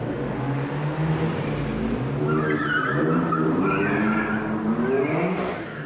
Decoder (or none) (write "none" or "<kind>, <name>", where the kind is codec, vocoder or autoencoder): none